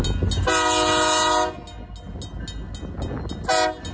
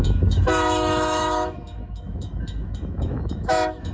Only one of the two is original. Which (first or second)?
first